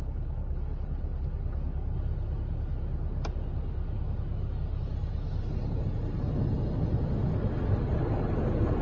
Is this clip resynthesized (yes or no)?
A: no